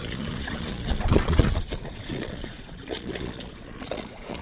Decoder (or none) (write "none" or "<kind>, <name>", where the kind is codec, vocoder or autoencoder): vocoder, Vocos